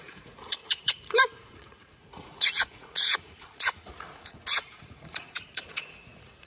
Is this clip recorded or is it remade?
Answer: remade